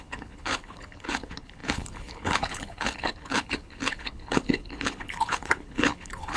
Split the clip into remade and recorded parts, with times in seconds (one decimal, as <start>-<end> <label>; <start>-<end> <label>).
0.0-6.4 remade